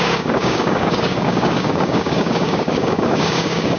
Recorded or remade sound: remade